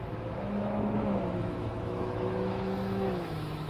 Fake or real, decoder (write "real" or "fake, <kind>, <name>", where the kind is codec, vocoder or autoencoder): fake, autoencoder, DAC-VAE